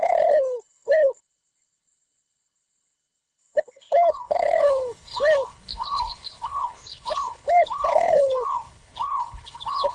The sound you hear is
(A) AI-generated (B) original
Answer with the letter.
A